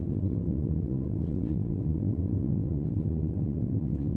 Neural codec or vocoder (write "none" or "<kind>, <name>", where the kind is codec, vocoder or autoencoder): vocoder, WaveNeXt